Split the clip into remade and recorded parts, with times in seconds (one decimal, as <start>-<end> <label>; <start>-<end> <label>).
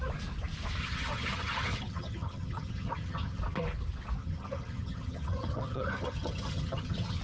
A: 0.0-0.8 recorded; 0.8-3.4 remade; 3.4-4.2 recorded; 4.2-7.2 remade